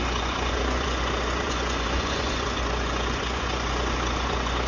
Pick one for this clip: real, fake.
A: fake